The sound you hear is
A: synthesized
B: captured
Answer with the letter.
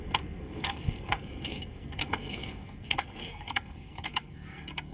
A